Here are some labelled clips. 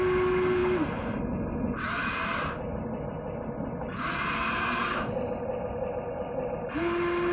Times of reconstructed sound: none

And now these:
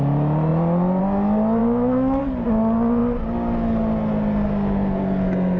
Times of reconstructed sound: 1.6-2.2 (autoencoder, DAC-VAE)

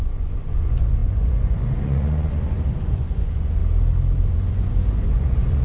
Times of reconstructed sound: 0.0-3.6 (vocoder, Vocos); 4.2-5.6

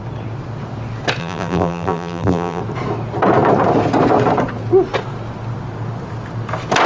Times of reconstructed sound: 1.2-2.6 (vocoder, BigVGAN v2)

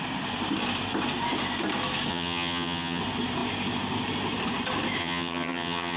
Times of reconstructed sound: 2.1-3.0 (vocoder, HiFi-GAN); 5.0-6.0

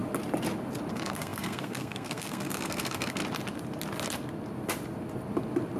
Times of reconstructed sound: 0.9-3.2 (codec, SNAC)